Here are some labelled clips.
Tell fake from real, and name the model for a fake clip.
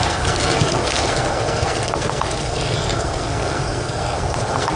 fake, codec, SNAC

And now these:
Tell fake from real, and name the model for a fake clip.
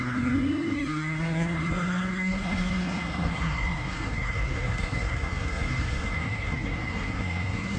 fake, codec, SNAC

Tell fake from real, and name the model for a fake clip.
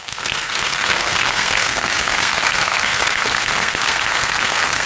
fake, codec, SNAC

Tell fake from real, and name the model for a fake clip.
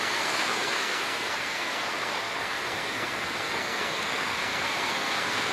fake, codec, SNAC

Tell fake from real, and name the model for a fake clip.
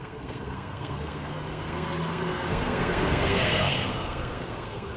fake, codec, SNAC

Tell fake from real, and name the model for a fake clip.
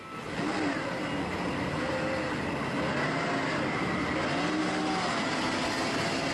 real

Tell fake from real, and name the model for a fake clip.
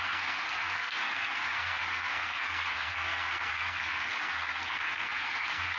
fake, codec, SNAC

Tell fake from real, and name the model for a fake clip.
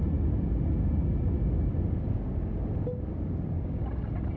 real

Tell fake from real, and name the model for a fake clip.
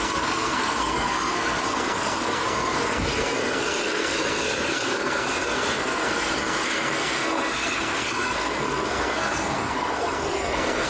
fake, codec, SNAC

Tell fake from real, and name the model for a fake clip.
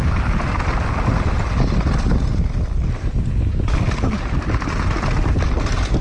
real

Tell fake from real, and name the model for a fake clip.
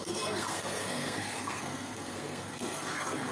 fake, codec, SNAC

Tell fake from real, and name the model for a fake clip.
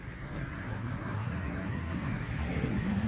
fake, codec, SNAC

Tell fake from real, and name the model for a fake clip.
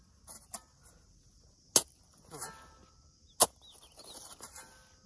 real